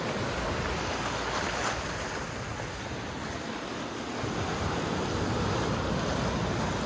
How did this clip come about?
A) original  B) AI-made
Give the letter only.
A